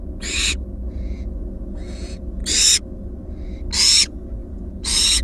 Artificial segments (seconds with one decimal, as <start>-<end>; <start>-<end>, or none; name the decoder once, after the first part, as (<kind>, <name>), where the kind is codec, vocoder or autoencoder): 0.0-2.4 (vocoder, Vocos); 3.8-5.2